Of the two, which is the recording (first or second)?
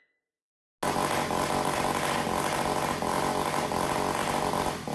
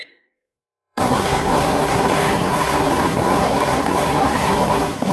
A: first